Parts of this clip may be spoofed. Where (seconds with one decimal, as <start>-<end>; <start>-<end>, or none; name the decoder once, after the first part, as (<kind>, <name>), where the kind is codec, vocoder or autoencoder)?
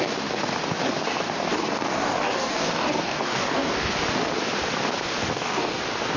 1.5-3.9 (codec, DAC); 5.2-5.8